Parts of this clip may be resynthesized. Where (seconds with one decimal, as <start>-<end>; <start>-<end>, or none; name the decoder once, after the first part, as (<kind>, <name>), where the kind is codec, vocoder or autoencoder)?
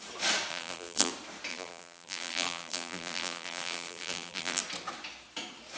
0.5-1.1 (vocoder, BigVGAN v2); 1.5-4.6